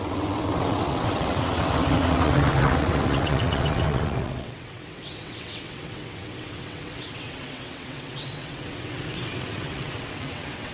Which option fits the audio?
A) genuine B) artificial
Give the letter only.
B